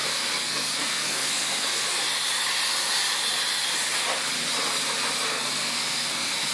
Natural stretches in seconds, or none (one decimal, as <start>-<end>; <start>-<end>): 2.0-5.3